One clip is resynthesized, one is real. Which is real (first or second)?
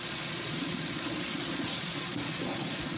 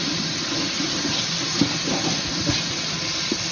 second